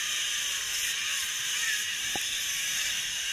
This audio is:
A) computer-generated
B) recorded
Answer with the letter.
A